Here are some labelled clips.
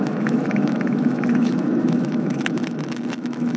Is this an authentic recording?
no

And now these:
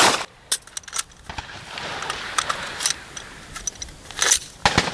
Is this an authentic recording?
yes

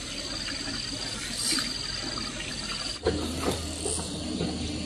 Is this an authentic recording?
yes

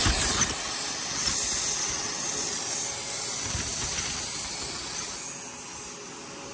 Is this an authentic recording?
yes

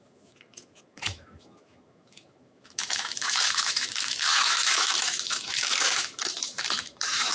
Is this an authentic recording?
no